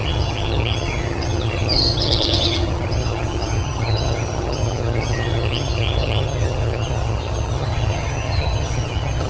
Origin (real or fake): fake